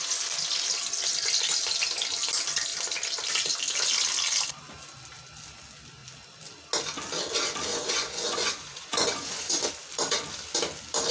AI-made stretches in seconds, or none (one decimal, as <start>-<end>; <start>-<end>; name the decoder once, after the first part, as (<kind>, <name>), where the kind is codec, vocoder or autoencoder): 7.7-9.7 (vocoder, Vocos)